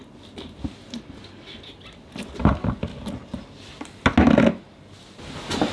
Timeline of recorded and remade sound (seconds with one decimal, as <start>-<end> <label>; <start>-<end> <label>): 0.0-5.7 recorded